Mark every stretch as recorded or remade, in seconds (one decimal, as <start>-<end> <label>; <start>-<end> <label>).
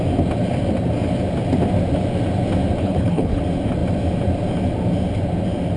0.0-2.8 recorded; 2.8-3.4 remade; 3.4-5.8 recorded